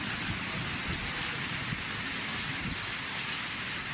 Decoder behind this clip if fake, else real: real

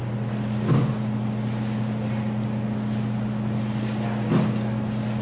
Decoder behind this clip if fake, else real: real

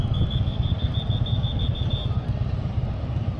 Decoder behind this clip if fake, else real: real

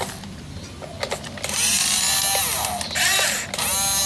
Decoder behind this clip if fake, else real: real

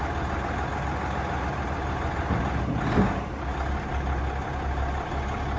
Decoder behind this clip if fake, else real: real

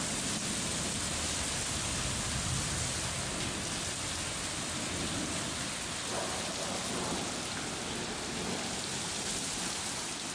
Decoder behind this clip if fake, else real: real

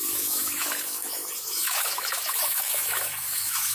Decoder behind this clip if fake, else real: fake, autoencoder, DAC-VAE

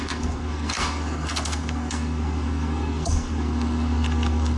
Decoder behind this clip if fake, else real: fake, codec, SNAC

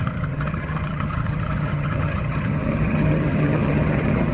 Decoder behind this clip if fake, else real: fake, vocoder, HiFi-GAN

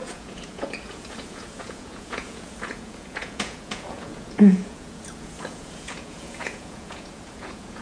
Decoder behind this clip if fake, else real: fake, vocoder, Vocos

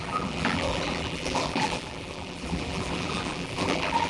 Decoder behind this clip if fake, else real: fake, vocoder, BigVGAN v2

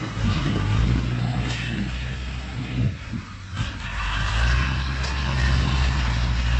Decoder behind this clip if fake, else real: fake, codec, SNAC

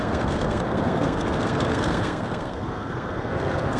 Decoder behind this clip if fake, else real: fake, codec, SNAC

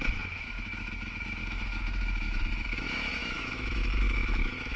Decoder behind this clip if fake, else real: fake, autoencoder, DAC-VAE